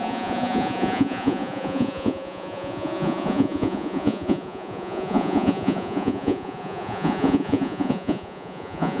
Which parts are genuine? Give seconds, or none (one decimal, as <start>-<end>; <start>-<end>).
none